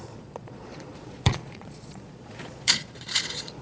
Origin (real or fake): fake